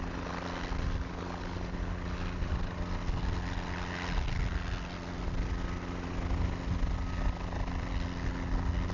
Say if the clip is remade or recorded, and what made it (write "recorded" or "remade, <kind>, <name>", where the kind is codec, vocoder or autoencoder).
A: recorded